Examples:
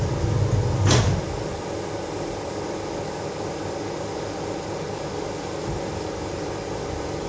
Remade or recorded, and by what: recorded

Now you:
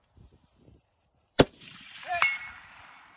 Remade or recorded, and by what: remade, vocoder, BigVGAN v2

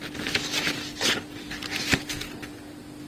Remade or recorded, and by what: recorded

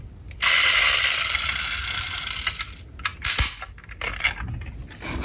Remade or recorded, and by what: recorded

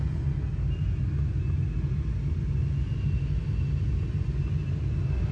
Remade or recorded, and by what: recorded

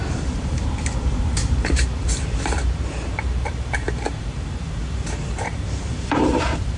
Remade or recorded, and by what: remade, vocoder, BigVGAN v2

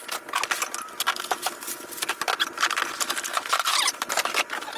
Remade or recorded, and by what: recorded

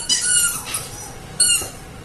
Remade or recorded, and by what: remade, vocoder, BigVGAN v2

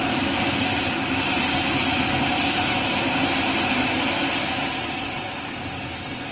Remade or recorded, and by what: recorded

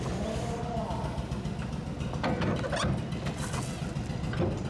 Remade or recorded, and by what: recorded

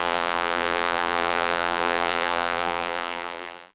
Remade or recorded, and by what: remade, vocoder, BigVGAN v2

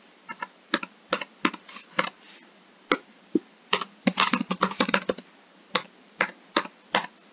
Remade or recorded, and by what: remade, vocoder, BigVGAN v2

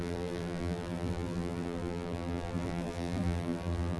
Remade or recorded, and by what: remade, vocoder, BigVGAN v2